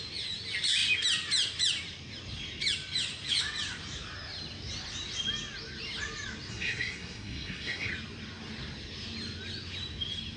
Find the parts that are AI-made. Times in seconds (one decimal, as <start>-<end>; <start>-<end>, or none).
6.5-7.9

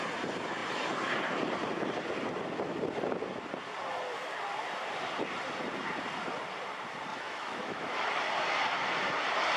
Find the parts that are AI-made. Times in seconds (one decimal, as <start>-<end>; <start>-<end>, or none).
7.1-8.1